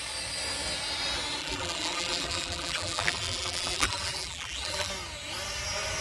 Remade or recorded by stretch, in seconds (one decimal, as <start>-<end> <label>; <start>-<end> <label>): 0.0-1.4 recorded; 1.4-4.9 remade; 4.9-6.0 recorded